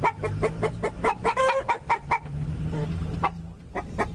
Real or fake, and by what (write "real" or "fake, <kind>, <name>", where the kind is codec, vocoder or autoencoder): fake, vocoder, BigVGAN v2